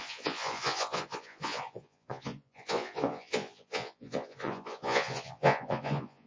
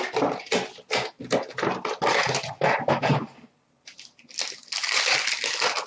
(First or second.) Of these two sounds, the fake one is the first